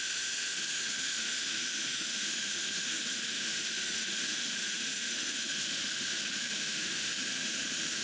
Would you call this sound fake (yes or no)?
yes